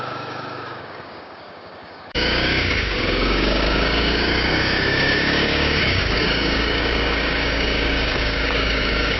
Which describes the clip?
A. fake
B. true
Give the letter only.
A